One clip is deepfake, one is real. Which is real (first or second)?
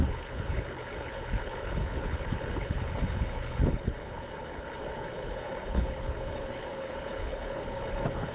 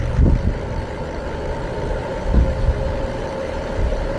second